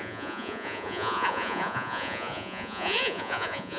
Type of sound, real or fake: fake